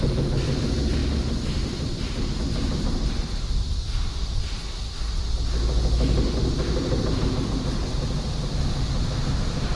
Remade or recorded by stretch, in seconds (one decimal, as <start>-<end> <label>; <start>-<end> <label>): 0.0-9.8 recorded